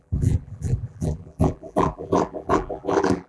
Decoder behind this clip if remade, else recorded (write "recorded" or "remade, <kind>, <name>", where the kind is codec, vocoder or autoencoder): remade, vocoder, BigVGAN v2